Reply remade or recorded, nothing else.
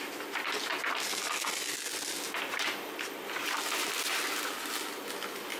recorded